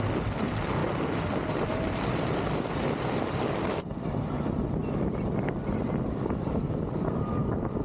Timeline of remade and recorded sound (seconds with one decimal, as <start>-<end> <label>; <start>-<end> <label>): 0.0-0.8 recorded; 0.8-3.5 remade; 3.5-4.8 recorded; 4.8-7.8 remade